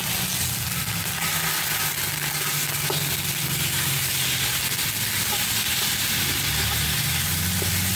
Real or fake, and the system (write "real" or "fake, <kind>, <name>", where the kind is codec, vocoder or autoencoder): real